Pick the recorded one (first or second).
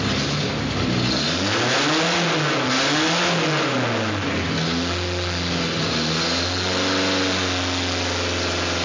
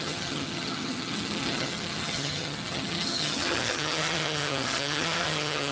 first